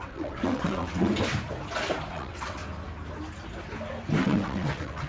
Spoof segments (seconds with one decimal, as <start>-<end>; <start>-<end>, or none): 0.0-1.1; 2.1-2.6; 4.2-5.1